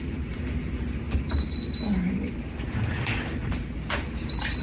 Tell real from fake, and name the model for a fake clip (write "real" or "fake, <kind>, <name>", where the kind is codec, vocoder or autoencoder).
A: fake, vocoder, BigVGAN v2